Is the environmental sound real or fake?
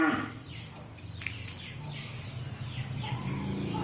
real